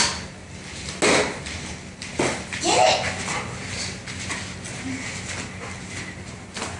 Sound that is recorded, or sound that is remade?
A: recorded